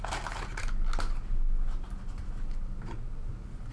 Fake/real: real